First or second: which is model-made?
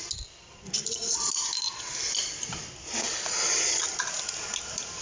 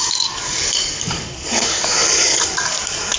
second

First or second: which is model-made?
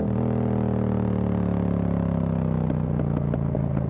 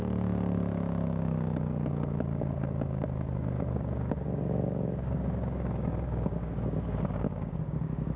second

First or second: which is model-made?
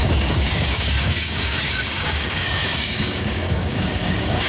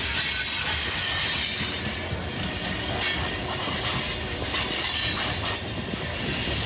first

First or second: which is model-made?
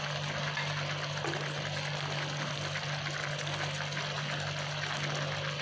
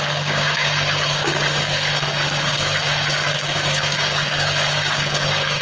second